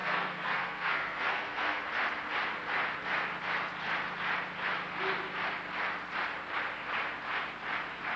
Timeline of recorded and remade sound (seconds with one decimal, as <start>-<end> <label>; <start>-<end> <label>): 0.0-1.8 remade; 1.8-8.2 recorded